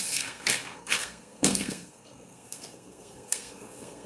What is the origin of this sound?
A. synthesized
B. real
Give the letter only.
A